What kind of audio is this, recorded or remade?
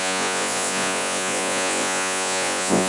remade